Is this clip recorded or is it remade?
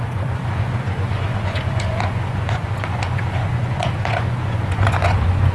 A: remade